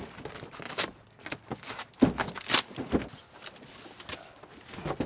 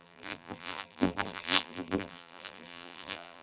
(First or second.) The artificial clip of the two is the second